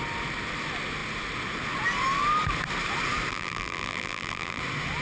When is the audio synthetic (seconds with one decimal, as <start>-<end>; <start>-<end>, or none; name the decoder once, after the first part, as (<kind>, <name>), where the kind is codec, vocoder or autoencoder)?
3.3-4.6 (vocoder, BigVGAN v2)